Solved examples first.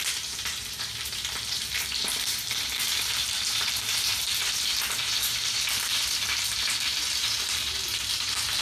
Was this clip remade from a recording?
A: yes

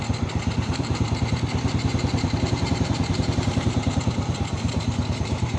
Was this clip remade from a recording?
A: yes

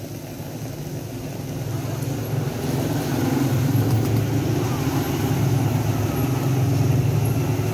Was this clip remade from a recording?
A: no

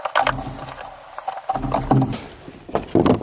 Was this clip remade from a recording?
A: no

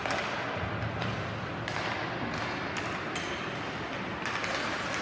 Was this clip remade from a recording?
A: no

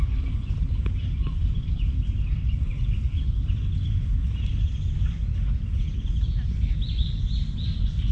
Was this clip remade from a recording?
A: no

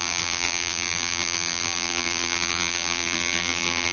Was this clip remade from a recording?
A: yes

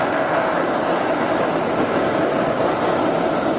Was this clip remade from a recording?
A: yes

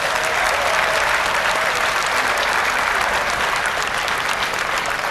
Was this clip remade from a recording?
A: yes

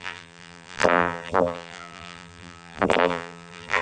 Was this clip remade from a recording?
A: yes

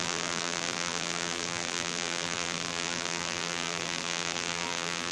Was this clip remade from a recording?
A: yes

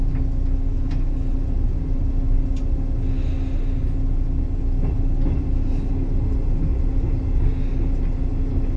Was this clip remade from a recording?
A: no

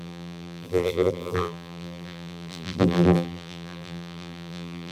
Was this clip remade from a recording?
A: yes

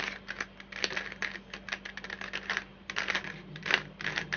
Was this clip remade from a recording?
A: yes